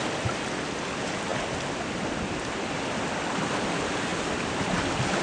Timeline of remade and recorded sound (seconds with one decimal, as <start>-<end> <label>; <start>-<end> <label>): 0.0-5.2 recorded